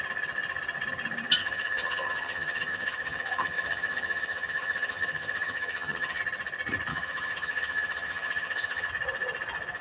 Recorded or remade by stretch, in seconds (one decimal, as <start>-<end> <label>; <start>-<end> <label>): 0.0-1.4 recorded; 1.4-6.2 remade; 6.2-6.9 recorded; 6.9-8.9 remade; 8.9-9.8 recorded

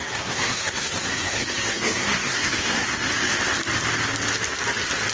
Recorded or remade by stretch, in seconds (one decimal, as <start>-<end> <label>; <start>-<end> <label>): 0.0-3.1 remade; 3.1-5.1 recorded

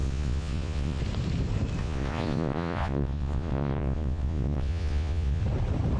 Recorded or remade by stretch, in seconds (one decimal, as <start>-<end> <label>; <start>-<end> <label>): 0.0-1.0 remade; 1.0-1.8 recorded; 1.8-5.4 remade; 5.4-6.0 recorded

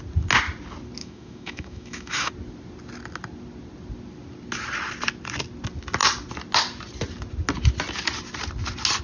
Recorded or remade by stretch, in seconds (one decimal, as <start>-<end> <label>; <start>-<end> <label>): 0.0-1.0 recorded; 1.0-2.3 remade; 2.3-9.0 recorded

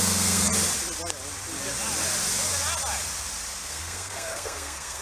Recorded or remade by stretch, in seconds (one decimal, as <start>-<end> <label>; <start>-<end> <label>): 0.0-0.5 remade; 0.5-3.5 recorded; 3.5-5.0 remade

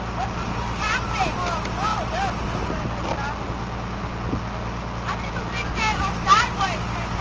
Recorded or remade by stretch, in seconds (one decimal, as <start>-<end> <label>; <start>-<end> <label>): 0.0-7.2 recorded

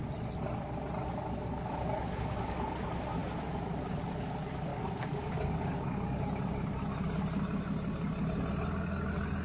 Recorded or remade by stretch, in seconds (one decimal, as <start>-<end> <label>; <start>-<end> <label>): 0.0-4.7 recorded; 4.7-6.2 remade; 6.2-9.4 recorded

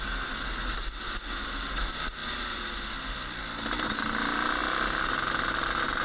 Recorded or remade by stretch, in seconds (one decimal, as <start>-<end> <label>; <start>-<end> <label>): 0.0-6.0 recorded